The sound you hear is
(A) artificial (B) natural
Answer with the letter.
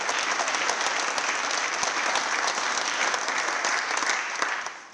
B